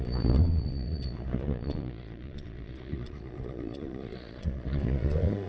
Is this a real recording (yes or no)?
no